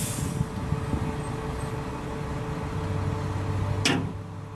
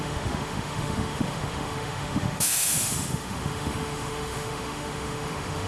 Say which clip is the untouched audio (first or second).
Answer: first